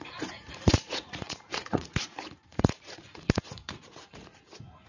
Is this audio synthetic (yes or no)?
yes